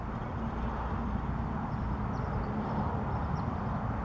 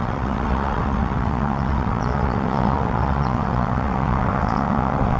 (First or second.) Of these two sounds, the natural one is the first